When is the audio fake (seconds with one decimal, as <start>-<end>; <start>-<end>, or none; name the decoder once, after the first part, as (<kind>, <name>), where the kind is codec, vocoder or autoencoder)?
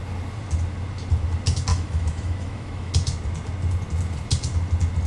1.7-2.9 (autoencoder, DAC-VAE)